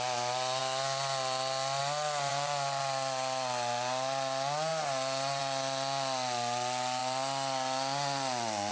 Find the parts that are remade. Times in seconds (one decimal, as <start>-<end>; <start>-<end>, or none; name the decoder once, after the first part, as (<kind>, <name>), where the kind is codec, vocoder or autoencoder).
2.3-2.8 (vocoder, Vocos)